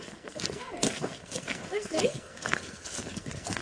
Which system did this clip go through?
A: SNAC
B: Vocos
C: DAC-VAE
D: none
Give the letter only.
A